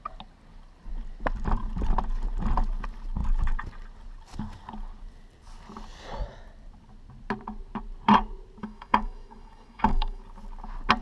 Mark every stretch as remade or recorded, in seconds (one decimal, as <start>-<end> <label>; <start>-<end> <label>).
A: 0.0-8.6 recorded; 8.6-10.2 remade; 10.2-11.0 recorded